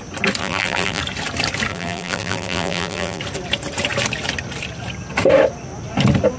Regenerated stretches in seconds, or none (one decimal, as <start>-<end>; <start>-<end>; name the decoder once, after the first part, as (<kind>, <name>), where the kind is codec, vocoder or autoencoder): 0.4-1.0 (vocoder, BigVGAN v2); 1.7-3.2